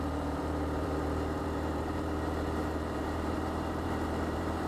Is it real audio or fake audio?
fake